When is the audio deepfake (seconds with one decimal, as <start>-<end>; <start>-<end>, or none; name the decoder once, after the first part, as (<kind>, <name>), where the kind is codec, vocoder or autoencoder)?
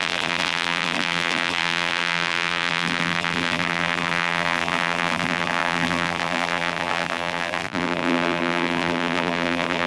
0.0-9.9 (vocoder, BigVGAN v2)